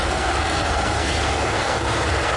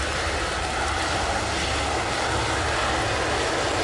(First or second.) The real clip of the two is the second